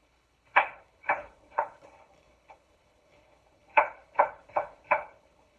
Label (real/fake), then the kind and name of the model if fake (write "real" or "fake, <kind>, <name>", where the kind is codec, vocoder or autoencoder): fake, codec, HILCodec